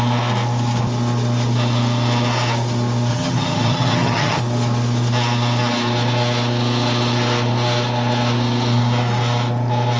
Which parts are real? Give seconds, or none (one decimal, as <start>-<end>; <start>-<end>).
0.0-3.1; 4.4-10.0